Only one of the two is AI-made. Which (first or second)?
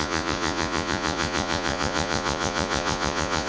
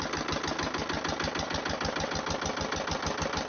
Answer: first